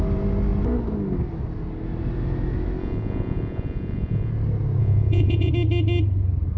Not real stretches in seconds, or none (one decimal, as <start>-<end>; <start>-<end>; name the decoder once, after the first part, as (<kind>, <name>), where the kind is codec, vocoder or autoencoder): 2.8-4.3 (vocoder, Vocos); 4.8-5.5